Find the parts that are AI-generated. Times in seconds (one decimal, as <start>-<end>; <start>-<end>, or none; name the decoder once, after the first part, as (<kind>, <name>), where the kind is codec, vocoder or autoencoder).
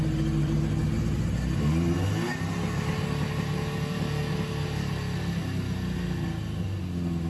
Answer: none